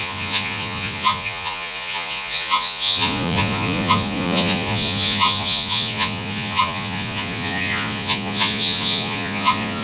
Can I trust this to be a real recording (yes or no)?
no